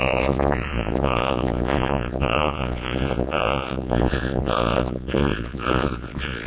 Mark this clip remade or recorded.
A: remade